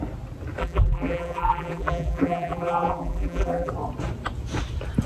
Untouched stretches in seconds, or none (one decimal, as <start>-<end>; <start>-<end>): 0.0-0.6; 3.7-5.1